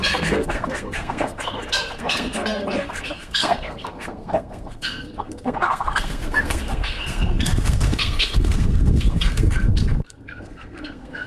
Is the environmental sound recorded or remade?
remade